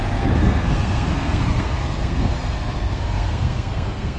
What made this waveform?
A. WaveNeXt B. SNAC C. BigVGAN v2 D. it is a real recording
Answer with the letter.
B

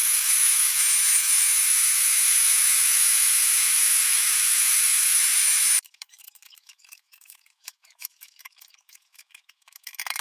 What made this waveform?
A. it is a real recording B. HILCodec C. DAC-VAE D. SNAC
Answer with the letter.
C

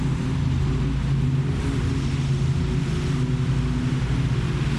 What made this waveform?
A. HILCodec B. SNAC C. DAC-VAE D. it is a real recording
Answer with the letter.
D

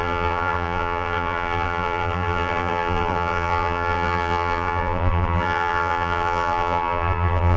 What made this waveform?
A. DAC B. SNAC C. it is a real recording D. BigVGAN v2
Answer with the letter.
D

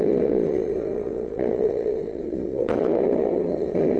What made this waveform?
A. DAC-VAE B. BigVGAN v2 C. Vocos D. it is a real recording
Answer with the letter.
C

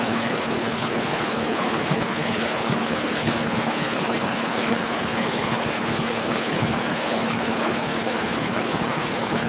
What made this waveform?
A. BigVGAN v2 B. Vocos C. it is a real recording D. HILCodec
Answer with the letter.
D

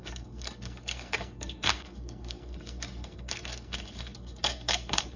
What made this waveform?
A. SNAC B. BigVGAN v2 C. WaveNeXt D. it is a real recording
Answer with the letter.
A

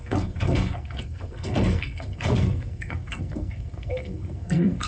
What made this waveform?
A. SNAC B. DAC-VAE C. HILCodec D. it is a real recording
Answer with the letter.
A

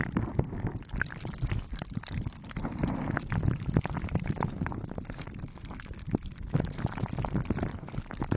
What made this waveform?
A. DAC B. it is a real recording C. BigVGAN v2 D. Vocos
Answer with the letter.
C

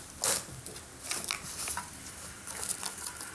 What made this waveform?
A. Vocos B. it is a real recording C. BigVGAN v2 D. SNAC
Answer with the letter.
B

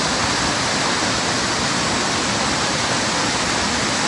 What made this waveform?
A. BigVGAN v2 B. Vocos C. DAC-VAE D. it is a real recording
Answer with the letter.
D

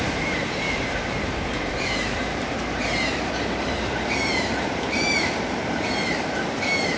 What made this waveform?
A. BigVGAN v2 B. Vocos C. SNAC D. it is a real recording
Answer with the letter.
A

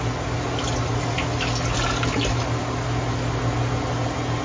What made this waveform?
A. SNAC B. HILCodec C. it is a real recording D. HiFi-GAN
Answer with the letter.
C